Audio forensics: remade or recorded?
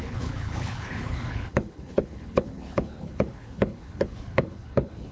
remade